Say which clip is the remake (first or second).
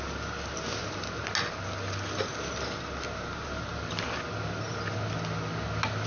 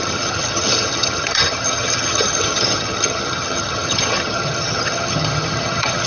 second